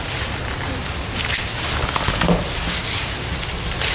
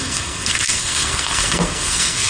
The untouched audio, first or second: first